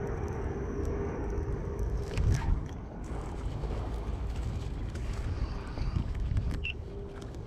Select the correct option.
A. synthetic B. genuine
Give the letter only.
A